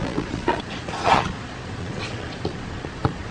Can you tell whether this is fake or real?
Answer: fake